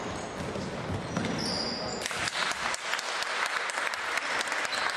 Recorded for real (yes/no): yes